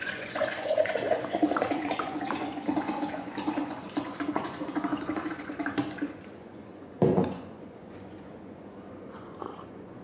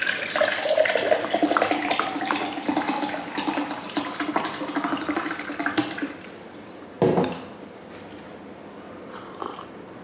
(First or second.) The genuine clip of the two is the second